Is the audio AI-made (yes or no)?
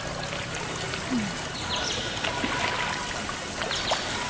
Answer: no